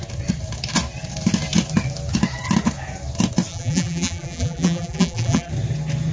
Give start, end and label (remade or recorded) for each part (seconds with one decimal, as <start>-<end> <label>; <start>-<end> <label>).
0.0-3.5 recorded; 3.5-5.5 remade; 5.5-6.1 recorded